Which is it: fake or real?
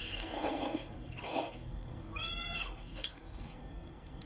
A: fake